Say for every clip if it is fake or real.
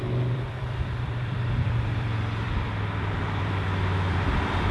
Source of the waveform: fake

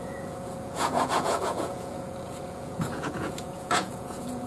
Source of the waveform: fake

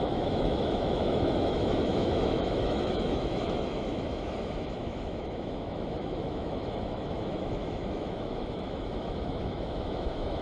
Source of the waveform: fake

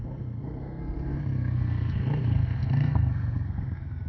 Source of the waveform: fake